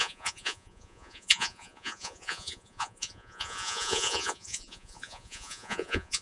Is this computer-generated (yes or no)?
yes